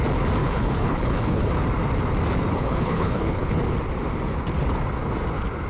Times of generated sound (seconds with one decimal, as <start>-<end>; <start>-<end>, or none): 0.4-1.5; 2.5-3.6

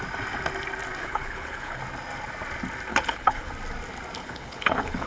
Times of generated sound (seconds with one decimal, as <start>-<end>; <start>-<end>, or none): 1.0-1.8; 2.9-3.5; 4.2-5.1